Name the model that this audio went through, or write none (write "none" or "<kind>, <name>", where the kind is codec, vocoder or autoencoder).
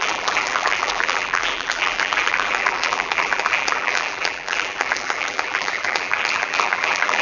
vocoder, BigVGAN v2